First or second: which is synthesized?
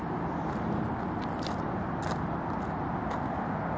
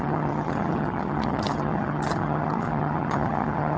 second